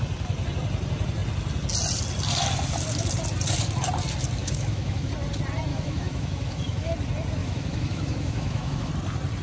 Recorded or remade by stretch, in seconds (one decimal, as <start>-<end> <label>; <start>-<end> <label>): 0.0-4.4 recorded; 4.4-5.1 remade; 5.1-5.7 recorded; 5.7-6.9 remade; 6.9-7.4 recorded; 7.4-8.9 remade; 8.9-9.4 recorded